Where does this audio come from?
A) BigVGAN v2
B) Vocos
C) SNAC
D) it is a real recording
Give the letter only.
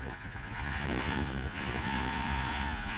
B